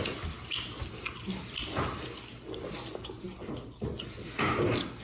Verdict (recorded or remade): recorded